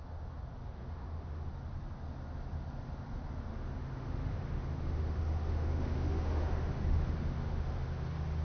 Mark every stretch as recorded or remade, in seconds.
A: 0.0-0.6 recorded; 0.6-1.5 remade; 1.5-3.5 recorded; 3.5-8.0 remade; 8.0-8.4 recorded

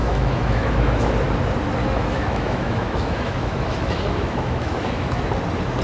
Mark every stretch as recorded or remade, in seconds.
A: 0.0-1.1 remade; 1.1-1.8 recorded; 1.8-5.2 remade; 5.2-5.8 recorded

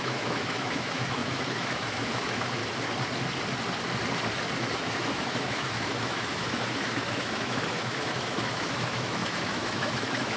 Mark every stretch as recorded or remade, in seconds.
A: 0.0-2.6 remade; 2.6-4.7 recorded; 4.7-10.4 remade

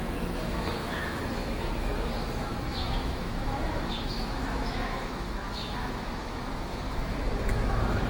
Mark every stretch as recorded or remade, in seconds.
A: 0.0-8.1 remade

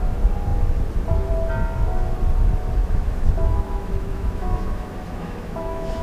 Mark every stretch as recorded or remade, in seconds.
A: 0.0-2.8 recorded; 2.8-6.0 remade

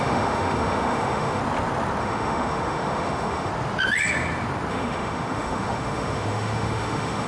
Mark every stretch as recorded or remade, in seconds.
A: 0.0-1.4 remade; 1.4-2.0 recorded; 2.0-3.5 remade; 3.5-4.7 recorded; 4.7-7.3 remade

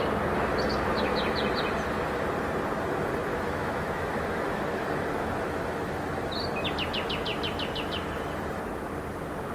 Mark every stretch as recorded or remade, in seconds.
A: 0.0-3.3 recorded; 3.3-6.3 remade; 6.3-9.5 recorded

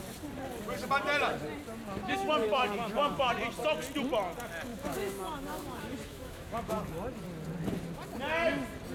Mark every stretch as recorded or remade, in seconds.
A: 0.0-2.0 recorded; 2.0-3.3 remade; 3.3-4.7 recorded; 4.7-6.8 remade; 6.8-8.9 recorded